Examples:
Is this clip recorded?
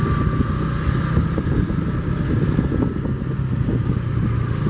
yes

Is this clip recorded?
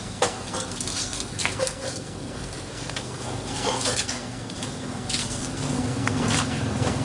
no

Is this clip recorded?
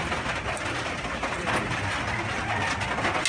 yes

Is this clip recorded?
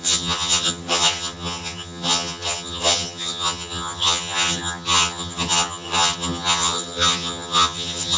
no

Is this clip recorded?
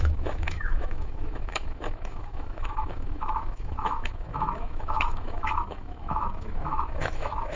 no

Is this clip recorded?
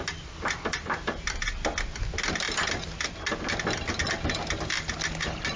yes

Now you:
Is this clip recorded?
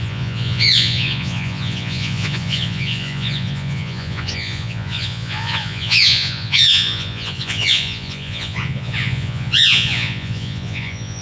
no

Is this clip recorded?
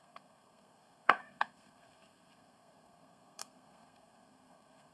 no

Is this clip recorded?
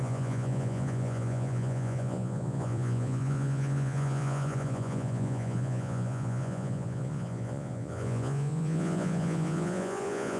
no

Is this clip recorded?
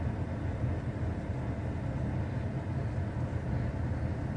yes